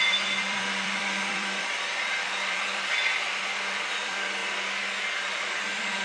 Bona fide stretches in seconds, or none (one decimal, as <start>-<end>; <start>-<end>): 4.4-5.3